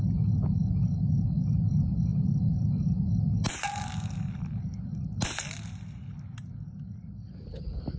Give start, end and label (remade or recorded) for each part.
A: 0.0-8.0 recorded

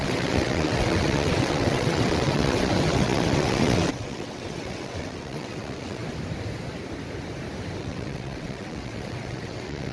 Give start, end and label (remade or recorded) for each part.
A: 0.0-6.0 remade; 6.0-7.8 recorded; 7.8-9.9 remade